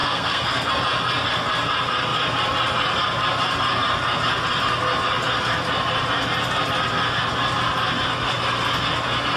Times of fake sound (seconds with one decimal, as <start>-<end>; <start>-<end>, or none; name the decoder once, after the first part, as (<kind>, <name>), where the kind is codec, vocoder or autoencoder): 0.0-0.7 (codec, SNAC)